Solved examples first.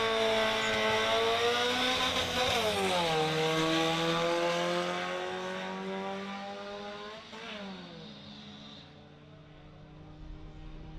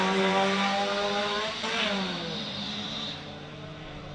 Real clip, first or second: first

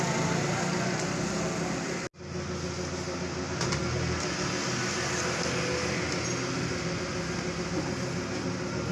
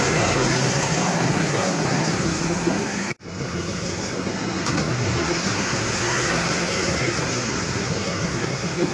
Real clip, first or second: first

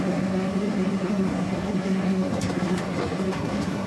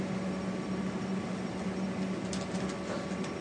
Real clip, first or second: second